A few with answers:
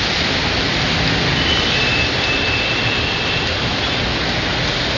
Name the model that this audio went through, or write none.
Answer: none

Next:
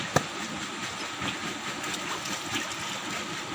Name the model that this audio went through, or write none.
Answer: none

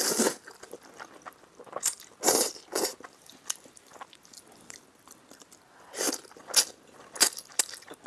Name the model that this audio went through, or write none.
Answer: none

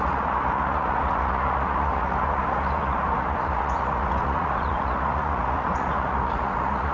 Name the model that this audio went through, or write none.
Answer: vocoder, Vocos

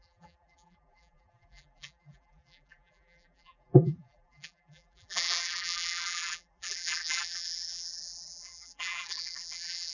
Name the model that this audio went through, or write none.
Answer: vocoder, BigVGAN v2